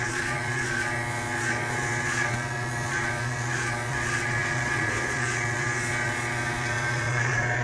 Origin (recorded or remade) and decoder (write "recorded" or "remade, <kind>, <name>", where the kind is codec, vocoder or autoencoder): remade, vocoder, Vocos